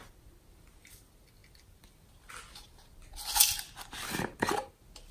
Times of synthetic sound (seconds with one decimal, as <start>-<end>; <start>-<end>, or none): none